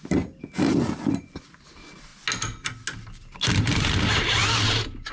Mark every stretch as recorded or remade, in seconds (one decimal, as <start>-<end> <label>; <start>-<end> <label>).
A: 0.0-5.1 recorded